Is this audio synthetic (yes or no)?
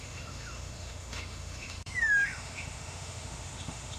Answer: yes